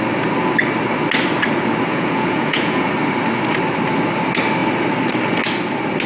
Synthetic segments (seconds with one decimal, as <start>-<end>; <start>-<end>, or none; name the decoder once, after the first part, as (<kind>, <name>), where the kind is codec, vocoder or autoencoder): 1.9-2.9 (vocoder, Vocos)